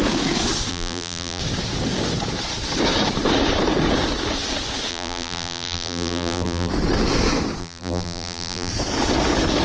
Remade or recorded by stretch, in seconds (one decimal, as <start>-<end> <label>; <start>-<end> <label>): 0.0-0.7 recorded; 0.7-1.4 remade; 1.4-4.9 recorded; 4.9-6.7 remade; 6.7-7.6 recorded; 7.6-8.7 remade; 8.7-9.6 recorded